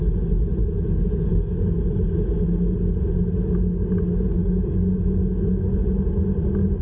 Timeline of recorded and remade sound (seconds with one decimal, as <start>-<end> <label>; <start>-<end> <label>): 0.0-1.3 recorded; 1.3-1.8 remade; 1.8-4.4 recorded; 4.4-4.9 remade; 4.9-6.8 recorded